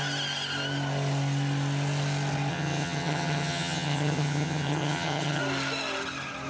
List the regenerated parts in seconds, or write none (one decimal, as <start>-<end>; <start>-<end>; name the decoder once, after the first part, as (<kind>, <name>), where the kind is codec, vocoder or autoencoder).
2.5-5.4 (vocoder, HiFi-GAN)